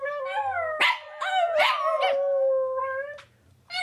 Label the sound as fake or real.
real